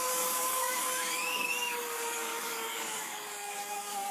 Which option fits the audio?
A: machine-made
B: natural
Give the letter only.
A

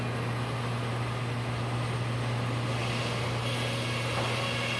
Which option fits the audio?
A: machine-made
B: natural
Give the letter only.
B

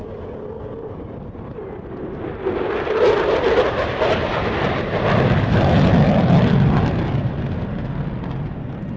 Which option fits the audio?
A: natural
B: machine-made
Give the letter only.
A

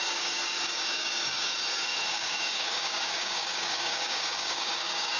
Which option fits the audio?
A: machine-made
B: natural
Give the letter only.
A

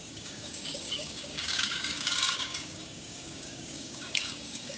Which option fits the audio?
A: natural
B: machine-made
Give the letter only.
B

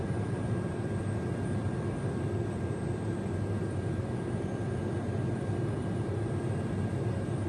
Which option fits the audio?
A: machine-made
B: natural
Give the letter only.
B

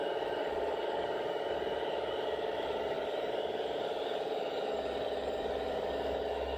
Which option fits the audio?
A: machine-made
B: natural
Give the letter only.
A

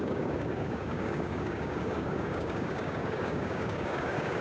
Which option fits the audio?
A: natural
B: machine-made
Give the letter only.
B